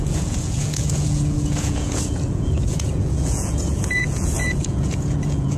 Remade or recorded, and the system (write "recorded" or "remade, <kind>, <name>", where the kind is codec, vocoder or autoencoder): remade, vocoder, Vocos